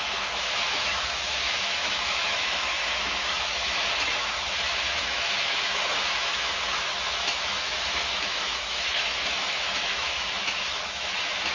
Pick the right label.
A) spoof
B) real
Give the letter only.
A